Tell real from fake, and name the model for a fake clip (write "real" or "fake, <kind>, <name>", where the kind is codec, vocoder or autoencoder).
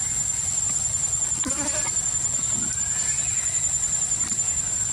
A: real